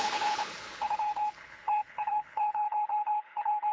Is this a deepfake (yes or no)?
yes